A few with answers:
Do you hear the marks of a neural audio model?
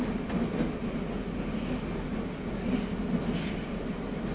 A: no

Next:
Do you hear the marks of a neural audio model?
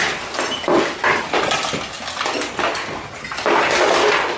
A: no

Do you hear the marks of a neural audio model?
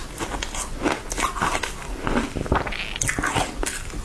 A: no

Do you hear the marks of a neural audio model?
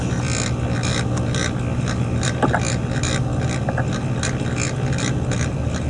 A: no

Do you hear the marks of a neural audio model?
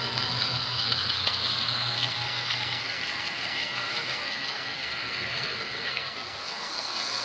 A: yes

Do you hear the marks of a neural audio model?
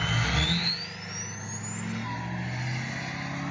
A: no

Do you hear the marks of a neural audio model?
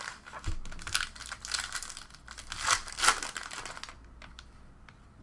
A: no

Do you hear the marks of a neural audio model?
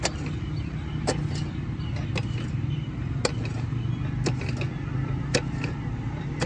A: no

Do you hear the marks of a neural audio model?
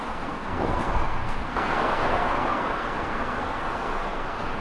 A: yes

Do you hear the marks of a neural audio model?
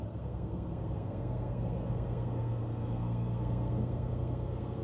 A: yes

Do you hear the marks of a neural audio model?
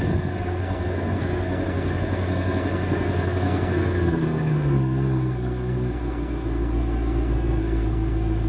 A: yes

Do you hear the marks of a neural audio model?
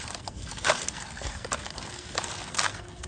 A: yes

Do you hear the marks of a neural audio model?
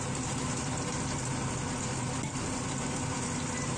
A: no